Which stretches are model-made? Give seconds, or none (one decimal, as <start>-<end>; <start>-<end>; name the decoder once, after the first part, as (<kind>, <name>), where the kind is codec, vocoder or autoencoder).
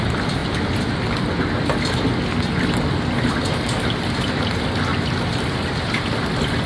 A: none